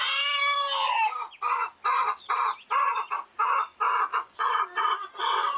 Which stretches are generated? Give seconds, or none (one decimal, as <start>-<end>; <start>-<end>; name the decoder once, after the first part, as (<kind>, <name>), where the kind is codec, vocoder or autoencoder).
4.1-5.6 (vocoder, Vocos)